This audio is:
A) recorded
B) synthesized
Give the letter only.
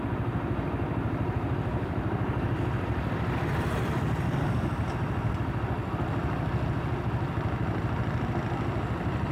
A